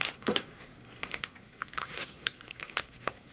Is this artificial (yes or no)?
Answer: yes